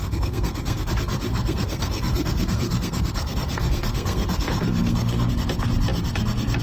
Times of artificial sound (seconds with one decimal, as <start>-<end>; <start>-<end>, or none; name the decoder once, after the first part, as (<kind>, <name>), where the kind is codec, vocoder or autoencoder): 0.0-0.9 (codec, SNAC); 1.3-5.3